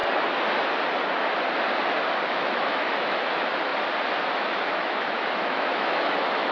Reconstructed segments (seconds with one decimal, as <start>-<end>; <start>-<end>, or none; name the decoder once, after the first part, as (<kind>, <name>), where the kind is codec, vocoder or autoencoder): 2.3-3.7 (autoencoder, DAC-VAE); 4.4-6.5